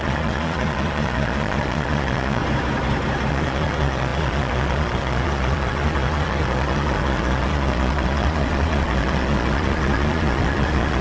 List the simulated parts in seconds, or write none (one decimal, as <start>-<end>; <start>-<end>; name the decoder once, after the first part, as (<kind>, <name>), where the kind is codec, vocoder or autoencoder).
0.0-2.4 (vocoder, Vocos); 3.3-11.0